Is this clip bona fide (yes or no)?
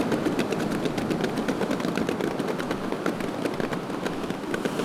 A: yes